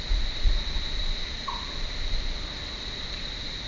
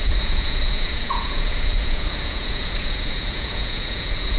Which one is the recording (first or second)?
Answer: first